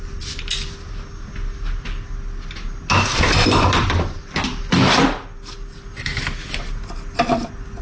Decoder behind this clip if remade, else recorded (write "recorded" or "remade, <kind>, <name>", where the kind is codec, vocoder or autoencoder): recorded